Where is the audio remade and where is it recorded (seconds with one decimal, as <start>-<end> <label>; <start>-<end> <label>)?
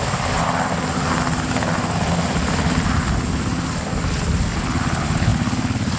0.0-6.0 recorded